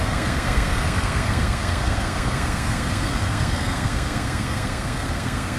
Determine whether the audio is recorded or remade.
remade